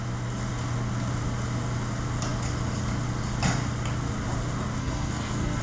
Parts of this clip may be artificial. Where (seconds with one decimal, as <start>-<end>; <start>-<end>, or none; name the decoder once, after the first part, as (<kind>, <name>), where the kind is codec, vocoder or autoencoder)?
4.8-5.6 (codec, SNAC)